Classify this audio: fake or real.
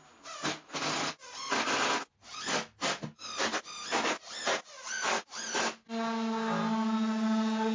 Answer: real